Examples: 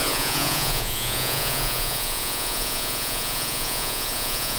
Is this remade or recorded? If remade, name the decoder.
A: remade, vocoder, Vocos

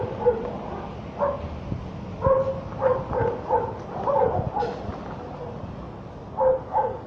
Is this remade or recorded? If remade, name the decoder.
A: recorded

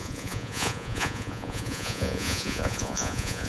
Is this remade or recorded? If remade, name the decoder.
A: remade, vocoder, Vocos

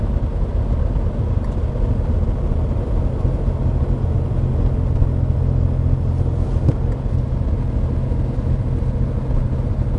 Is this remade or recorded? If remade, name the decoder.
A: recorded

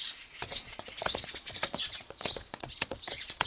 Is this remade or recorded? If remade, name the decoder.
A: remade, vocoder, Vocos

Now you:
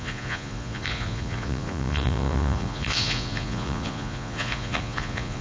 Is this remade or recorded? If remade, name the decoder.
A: remade, vocoder, Vocos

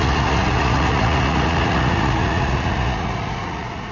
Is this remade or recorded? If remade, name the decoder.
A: remade, vocoder, Vocos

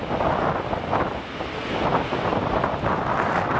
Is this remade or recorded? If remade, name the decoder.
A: recorded